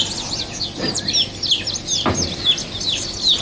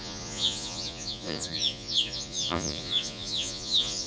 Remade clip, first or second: second